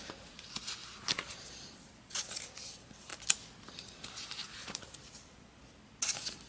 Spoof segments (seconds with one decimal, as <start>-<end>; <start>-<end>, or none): 4.6-5.4